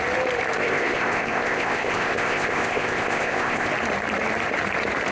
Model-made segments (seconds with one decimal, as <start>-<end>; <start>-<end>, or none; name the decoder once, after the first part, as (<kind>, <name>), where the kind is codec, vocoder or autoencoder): 0.6-3.7 (codec, ZipCodec)